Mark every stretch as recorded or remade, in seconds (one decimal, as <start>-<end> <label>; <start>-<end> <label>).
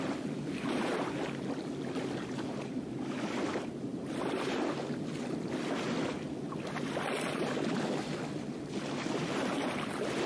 0.0-10.3 recorded